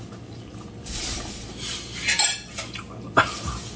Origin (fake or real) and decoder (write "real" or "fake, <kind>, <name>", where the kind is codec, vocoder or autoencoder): real